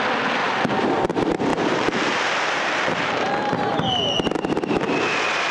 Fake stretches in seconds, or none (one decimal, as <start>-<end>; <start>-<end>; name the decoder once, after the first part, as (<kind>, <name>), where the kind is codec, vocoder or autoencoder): 0.4-1.0 (vocoder, BigVGAN v2); 1.5-3.7